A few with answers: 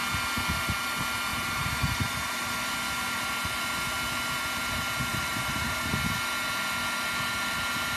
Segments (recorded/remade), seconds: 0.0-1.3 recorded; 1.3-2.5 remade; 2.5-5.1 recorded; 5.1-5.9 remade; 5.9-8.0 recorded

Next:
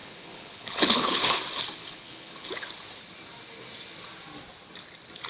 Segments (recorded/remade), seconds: 0.0-1.4 remade; 1.4-1.8 recorded; 1.8-2.7 remade; 2.7-5.3 recorded